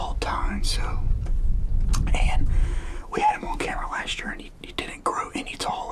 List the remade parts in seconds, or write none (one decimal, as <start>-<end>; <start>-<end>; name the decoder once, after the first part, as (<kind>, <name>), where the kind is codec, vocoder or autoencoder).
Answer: 2.6-4.0 (autoencoder, DAC-VAE)